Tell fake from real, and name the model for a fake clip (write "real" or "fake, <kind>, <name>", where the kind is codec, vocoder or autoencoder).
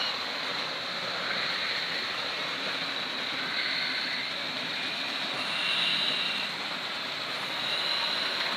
real